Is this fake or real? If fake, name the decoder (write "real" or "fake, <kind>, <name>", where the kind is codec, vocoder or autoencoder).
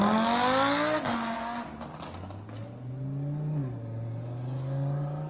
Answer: real